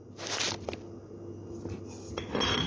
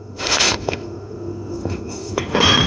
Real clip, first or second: first